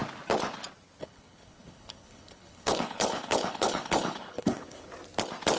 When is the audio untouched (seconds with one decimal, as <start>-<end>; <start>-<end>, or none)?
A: 0.0-1.0; 4.9-5.6